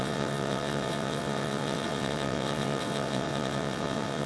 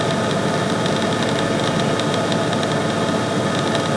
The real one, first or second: second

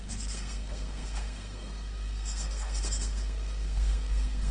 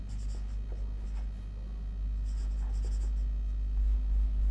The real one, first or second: second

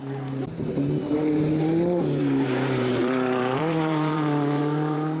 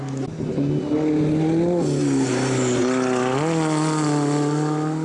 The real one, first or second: second